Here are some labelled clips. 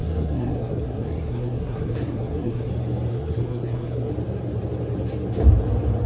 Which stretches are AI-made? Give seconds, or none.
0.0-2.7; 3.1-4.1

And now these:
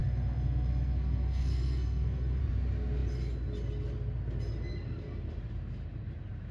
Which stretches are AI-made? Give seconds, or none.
0.0-2.4

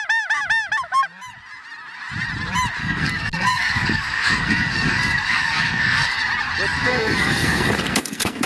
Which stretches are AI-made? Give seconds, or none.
2.8-6.2; 6.7-8.5

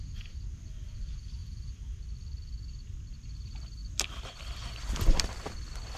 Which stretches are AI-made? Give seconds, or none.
none